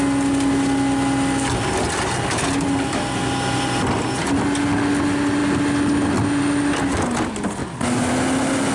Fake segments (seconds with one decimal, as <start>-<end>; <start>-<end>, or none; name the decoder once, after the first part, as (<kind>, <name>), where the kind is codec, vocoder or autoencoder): 7.6-8.1 (codec, DAC)